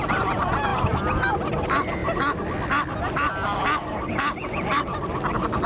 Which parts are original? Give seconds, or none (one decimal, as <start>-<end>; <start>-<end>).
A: 0.0-5.7

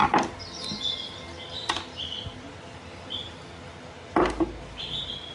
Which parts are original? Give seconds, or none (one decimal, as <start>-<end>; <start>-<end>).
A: 0.0-5.3